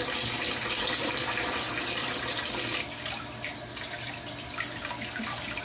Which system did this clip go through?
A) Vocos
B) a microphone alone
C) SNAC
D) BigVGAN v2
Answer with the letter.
B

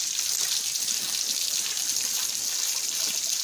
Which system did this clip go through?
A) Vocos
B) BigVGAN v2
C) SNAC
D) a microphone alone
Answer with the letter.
D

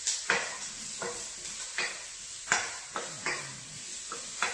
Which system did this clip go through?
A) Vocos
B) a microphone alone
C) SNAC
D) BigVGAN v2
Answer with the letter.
B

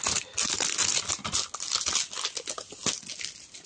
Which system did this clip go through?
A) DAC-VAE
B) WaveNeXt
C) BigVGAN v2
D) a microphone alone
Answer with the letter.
D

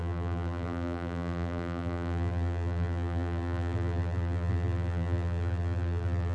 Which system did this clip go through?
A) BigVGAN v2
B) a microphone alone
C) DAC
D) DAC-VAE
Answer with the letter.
A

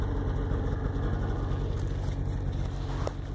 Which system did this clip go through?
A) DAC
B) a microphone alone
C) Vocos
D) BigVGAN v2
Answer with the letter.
B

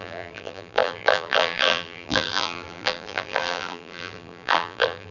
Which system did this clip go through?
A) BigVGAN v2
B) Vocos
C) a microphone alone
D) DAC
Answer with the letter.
A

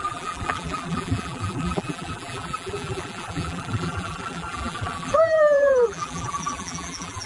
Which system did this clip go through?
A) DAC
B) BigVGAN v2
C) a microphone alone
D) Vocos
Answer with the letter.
B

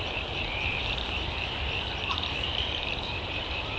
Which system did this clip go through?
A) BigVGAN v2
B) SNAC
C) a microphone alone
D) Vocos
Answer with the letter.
A